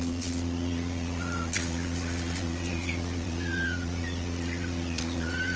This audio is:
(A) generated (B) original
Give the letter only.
A